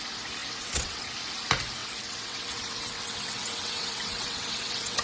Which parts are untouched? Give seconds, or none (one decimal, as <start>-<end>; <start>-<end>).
0.0-0.4; 1.1-1.8